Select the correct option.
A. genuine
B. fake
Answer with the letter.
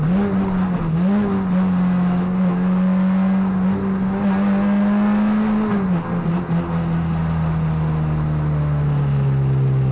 A